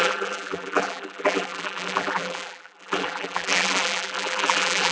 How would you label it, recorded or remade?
remade